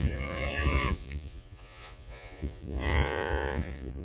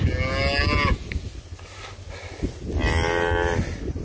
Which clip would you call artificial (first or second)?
first